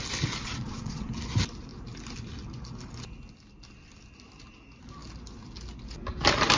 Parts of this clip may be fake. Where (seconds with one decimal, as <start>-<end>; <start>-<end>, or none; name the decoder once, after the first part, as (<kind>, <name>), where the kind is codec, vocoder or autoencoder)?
0.4-1.1 (vocoder, Vocos)